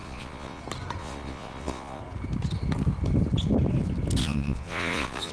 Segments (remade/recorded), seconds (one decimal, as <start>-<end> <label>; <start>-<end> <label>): 0.0-0.6 remade; 0.6-1.0 recorded; 1.0-2.0 remade; 2.0-4.2 recorded; 4.2-5.3 remade